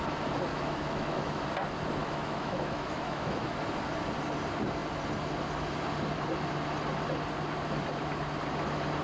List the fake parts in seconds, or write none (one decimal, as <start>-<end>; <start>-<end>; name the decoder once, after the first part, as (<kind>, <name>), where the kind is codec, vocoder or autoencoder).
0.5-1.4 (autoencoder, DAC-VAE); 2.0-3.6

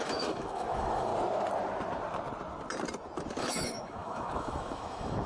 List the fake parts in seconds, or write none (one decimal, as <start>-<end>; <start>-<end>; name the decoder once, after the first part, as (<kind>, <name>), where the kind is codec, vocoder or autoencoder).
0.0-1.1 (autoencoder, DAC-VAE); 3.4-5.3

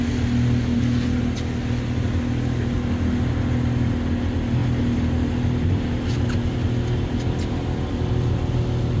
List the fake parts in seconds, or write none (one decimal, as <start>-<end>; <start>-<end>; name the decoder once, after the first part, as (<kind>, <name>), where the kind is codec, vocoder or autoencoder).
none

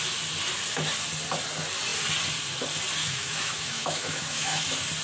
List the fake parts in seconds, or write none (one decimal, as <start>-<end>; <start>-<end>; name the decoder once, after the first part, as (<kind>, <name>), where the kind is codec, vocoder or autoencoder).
3.0-4.6 (autoencoder, DAC-VAE)

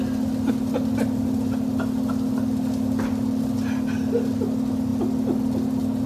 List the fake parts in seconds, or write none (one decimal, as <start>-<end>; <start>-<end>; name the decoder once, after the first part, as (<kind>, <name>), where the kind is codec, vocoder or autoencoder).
none